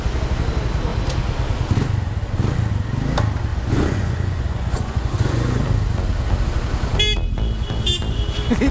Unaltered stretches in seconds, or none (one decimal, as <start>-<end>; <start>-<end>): 0.0-3.5; 5.6-8.7